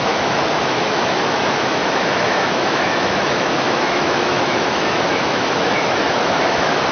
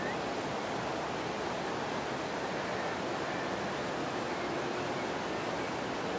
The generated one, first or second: first